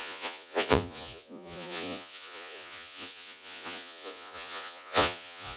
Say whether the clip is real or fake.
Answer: fake